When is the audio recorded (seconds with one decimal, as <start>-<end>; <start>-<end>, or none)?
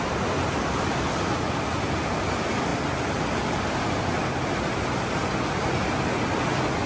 0.0-6.9